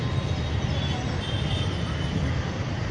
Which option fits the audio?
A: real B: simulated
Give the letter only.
A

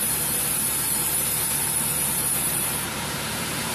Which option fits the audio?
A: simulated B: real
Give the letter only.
A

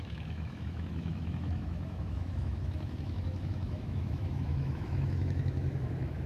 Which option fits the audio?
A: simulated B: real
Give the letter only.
A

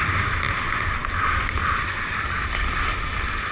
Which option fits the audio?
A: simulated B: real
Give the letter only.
B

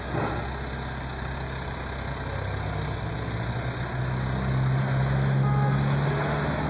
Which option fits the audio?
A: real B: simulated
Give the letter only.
A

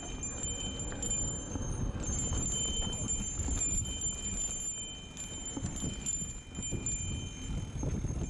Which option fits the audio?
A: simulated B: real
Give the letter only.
B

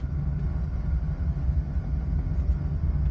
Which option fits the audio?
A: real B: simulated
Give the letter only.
A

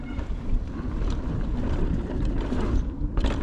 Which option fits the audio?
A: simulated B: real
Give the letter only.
A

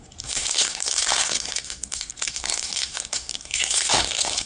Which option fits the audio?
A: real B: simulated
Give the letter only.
B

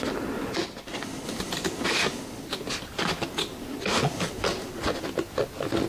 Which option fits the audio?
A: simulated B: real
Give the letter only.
B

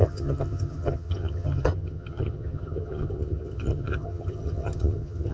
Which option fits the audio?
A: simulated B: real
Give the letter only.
A